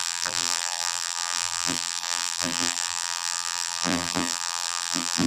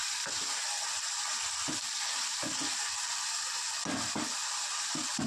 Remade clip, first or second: first